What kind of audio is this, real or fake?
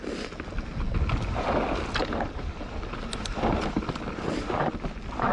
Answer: real